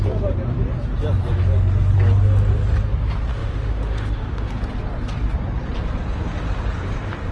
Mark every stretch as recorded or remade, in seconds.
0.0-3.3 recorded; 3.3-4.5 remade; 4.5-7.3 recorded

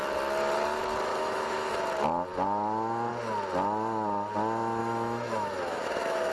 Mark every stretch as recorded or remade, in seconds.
0.0-1.1 recorded; 1.1-1.7 remade; 1.7-4.8 recorded; 4.8-6.3 remade

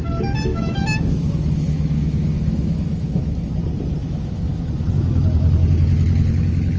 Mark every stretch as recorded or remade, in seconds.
0.0-0.5 recorded; 0.5-3.5 remade; 3.5-4.0 recorded; 4.0-4.6 remade; 4.6-6.8 recorded